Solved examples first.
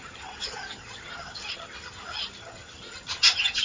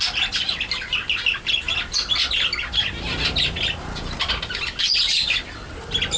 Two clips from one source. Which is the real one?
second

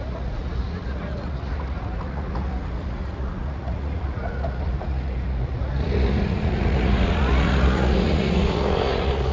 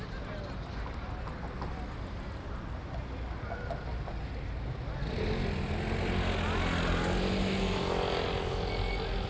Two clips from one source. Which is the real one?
second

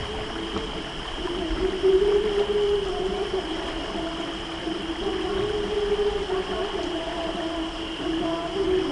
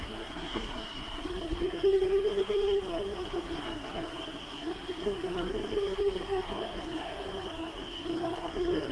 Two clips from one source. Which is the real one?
first